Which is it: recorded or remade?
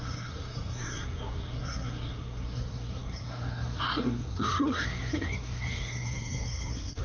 remade